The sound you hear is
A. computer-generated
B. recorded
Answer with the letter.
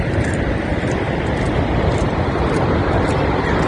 B